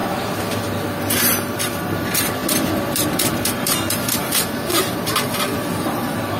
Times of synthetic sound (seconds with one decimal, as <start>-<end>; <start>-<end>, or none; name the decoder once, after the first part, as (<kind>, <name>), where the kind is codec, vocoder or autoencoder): 1.2-6.4 (vocoder, BigVGAN v2)